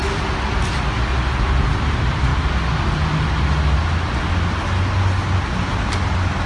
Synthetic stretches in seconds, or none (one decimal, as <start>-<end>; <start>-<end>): 0.5-1.1; 1.7-2.3